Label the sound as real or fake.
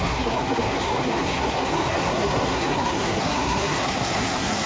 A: fake